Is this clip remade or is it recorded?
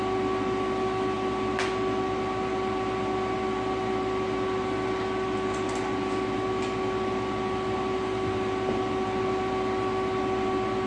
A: recorded